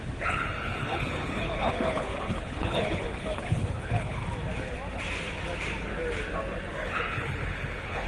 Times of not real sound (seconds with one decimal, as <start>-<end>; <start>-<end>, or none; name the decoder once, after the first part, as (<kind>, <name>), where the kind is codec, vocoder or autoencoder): 0.0-4.2 (codec, HILCodec); 6.7-8.1